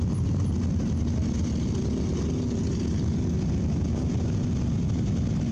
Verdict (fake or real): real